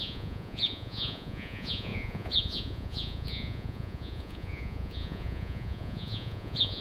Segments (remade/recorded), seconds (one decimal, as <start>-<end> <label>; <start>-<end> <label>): 0.0-6.8 remade